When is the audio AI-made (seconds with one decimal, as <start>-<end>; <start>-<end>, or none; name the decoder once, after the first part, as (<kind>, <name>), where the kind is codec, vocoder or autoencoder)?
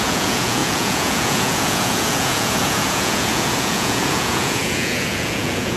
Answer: 0.0-5.8 (vocoder, Vocos)